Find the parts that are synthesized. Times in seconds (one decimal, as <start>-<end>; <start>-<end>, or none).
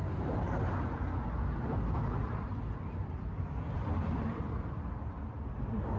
none